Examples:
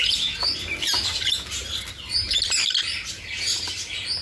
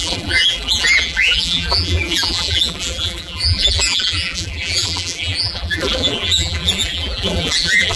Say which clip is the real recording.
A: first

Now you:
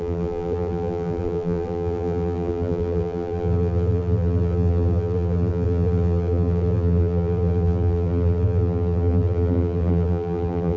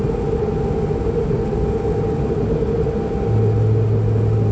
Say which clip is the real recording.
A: second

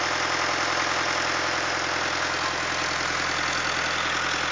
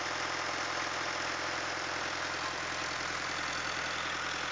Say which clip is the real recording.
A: first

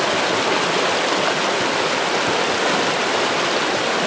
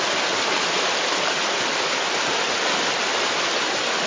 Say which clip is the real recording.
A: first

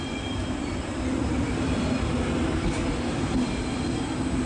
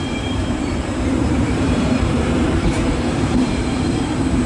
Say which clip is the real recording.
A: first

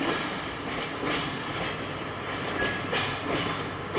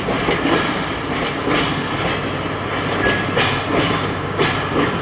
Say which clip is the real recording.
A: second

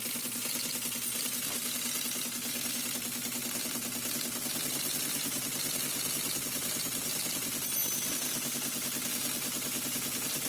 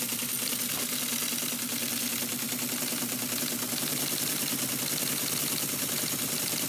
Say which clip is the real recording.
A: first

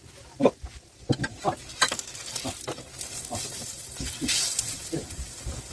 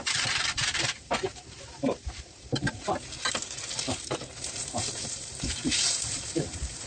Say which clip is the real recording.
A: first